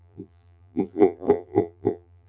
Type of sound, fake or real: fake